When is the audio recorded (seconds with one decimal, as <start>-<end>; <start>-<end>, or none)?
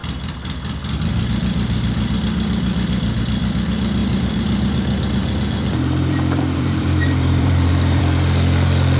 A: 0.0-4.0; 8.0-9.0